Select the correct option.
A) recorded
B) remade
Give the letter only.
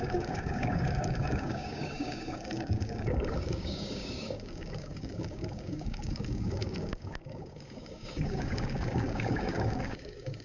B